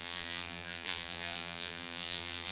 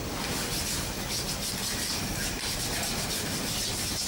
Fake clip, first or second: first